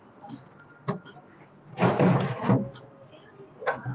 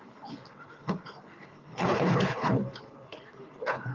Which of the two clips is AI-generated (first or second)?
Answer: second